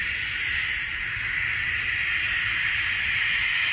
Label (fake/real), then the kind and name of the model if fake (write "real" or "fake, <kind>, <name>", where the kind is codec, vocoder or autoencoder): real